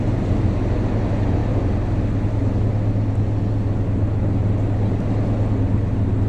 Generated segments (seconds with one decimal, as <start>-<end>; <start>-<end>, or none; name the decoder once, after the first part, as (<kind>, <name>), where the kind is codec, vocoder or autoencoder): none